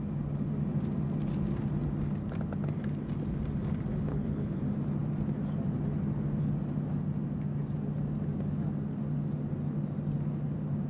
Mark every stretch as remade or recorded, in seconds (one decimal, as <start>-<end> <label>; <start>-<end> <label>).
0.0-4.1 recorded; 4.1-4.6 remade; 4.6-10.9 recorded